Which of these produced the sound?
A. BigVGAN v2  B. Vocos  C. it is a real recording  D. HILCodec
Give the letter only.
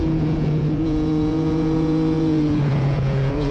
B